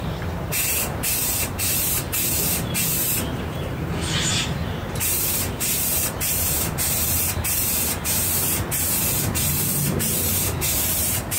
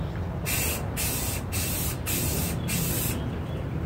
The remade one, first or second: first